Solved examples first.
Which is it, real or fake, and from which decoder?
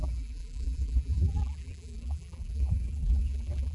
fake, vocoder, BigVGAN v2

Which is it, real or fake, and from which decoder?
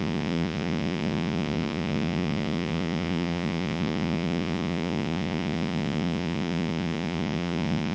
fake, vocoder, Vocos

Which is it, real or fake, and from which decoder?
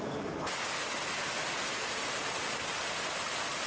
real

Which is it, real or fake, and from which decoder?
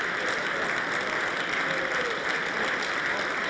real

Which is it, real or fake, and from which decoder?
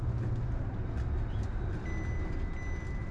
real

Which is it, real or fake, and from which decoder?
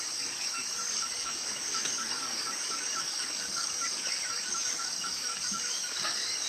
fake, codec, DAC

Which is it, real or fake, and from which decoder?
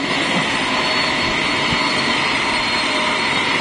real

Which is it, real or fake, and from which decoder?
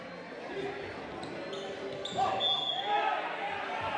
real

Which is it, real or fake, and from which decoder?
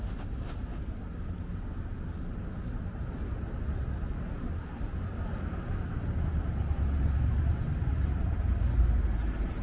real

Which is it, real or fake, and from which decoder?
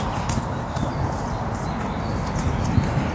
real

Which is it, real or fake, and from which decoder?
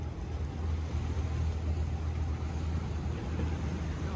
real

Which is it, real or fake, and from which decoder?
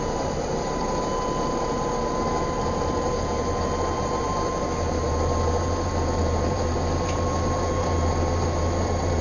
fake, vocoder, BigVGAN v2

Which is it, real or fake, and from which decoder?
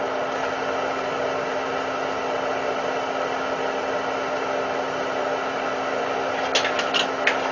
real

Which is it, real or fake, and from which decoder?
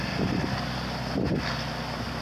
real